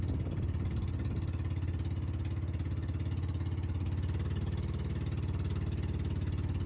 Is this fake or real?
real